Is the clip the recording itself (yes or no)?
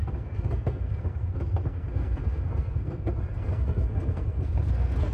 no